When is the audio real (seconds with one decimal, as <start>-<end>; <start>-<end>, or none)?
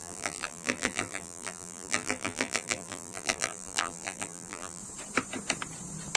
4.8-6.2